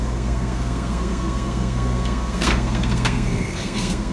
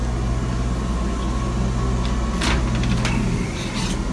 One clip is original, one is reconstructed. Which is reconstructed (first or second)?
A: first